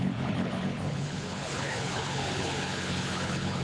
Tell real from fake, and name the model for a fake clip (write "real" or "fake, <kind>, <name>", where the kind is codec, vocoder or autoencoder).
fake, codec, HILCodec